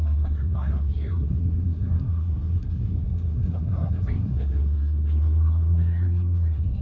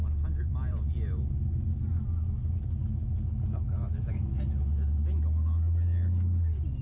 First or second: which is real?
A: second